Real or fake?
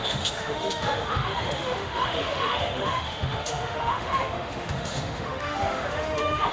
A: fake